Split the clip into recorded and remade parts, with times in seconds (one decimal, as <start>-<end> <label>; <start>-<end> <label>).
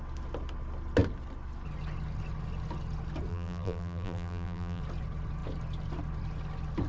0.0-3.3 recorded; 3.3-4.8 remade; 4.8-6.9 recorded